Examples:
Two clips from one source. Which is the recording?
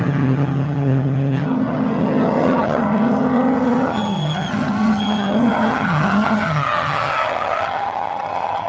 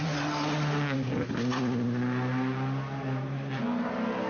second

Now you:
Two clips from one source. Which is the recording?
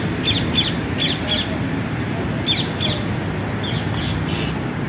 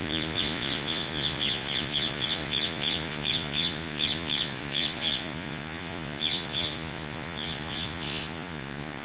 first